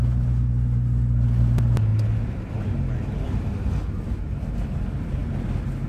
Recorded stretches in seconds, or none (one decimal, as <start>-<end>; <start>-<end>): 0.0-5.9